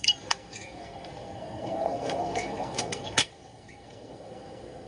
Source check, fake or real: fake